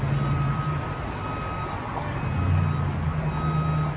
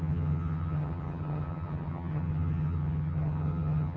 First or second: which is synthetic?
second